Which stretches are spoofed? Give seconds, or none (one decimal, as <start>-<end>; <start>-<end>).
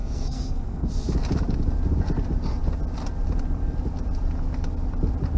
0.0-0.9